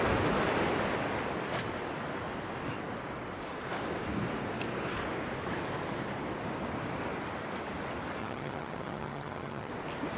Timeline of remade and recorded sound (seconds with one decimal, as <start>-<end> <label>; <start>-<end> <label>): 0.0-8.2 recorded; 8.2-9.7 remade; 9.7-10.2 recorded